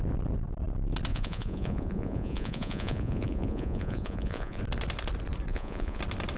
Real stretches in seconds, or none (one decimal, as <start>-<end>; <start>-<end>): 0.0-1.1; 4.6-5.5; 6.0-6.4